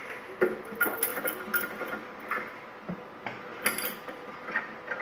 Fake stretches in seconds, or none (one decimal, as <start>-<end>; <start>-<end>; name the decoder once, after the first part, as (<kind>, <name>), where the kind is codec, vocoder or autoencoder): 0.0-1.1 (vocoder, BigVGAN v2); 2.7-3.5